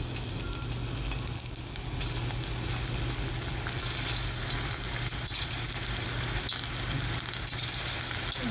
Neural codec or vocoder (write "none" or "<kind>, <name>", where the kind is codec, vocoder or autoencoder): none